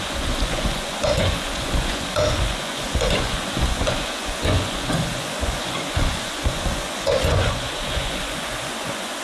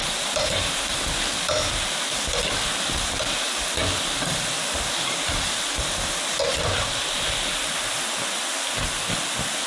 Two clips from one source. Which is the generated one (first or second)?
first